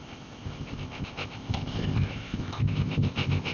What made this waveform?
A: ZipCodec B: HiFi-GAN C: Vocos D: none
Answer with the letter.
A